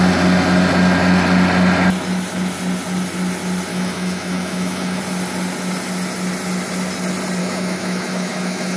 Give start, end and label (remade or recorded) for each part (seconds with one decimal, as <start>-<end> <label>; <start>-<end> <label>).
0.0-3.7 recorded; 3.7-5.0 remade; 5.0-7.4 recorded; 7.4-8.8 remade